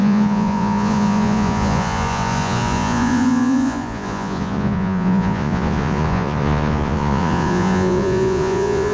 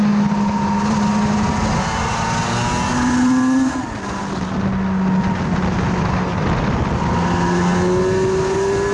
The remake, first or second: first